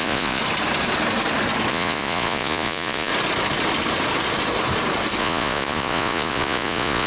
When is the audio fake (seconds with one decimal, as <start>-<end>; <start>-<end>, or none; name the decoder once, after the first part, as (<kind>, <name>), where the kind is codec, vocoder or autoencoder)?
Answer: 0.0-0.4 (vocoder, Vocos); 1.7-3.1; 5.2-7.1